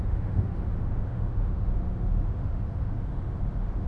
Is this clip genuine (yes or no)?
no